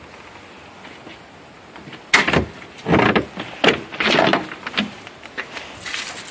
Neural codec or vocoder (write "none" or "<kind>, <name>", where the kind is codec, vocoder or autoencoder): none